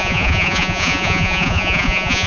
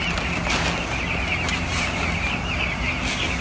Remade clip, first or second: first